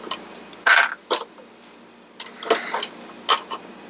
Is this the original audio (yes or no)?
yes